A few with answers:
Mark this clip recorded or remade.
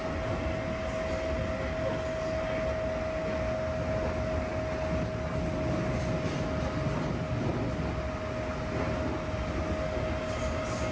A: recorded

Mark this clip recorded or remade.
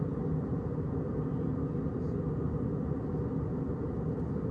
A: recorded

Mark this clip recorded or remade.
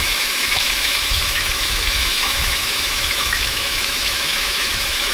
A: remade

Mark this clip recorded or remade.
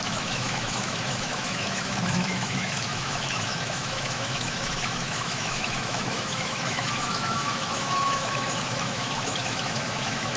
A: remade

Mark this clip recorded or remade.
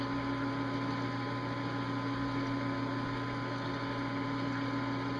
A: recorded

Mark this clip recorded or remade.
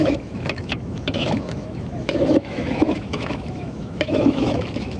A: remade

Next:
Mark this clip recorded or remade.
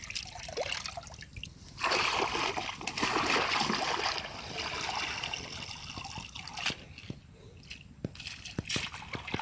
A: recorded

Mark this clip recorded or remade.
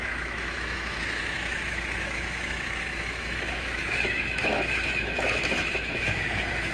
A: remade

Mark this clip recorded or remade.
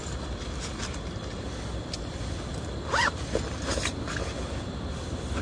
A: recorded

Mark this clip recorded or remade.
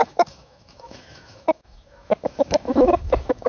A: remade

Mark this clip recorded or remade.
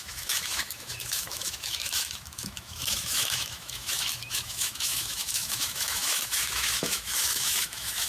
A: remade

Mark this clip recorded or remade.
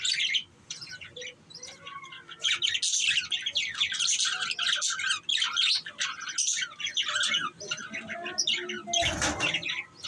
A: recorded